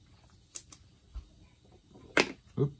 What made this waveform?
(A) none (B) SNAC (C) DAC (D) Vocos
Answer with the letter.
A